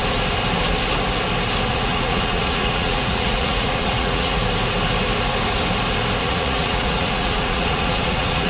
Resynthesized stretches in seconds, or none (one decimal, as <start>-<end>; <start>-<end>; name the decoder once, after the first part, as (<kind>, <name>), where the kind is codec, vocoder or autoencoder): 1.7-4.4 (vocoder, Vocos); 6.2-8.5